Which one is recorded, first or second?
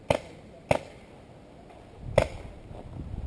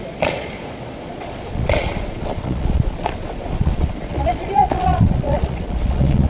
first